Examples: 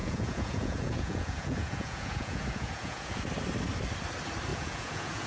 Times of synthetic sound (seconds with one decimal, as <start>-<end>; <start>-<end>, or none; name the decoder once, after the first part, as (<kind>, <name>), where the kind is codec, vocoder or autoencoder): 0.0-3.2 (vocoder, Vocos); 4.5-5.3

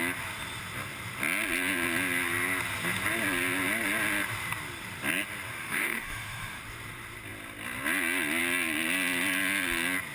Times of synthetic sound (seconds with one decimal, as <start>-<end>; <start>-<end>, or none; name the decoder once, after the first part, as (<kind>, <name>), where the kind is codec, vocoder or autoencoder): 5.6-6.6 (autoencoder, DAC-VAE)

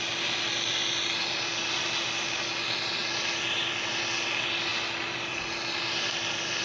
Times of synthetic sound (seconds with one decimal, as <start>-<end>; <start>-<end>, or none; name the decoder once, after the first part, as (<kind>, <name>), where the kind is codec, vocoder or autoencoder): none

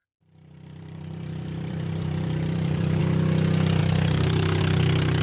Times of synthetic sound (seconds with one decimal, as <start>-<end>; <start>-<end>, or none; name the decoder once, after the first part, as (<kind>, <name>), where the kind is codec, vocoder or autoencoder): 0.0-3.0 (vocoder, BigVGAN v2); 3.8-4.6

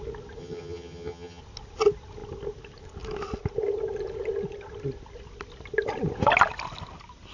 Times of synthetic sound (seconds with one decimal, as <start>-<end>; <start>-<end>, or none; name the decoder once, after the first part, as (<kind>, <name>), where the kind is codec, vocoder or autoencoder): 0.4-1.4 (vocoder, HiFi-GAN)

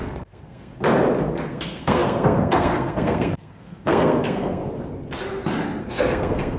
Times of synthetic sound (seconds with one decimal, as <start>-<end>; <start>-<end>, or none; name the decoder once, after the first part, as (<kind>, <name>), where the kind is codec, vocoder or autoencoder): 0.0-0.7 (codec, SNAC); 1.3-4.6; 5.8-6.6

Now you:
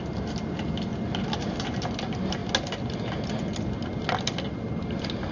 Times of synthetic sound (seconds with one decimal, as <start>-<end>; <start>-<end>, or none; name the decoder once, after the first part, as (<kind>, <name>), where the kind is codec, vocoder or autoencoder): none

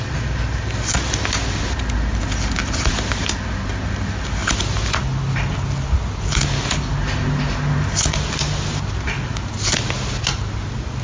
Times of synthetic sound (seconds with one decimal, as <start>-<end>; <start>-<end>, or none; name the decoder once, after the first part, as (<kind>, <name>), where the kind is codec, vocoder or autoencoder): none